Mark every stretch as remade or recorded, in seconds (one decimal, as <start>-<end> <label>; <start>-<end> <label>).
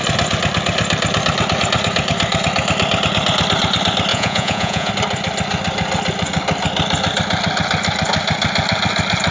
0.0-4.1 recorded; 4.1-4.9 remade; 4.9-9.3 recorded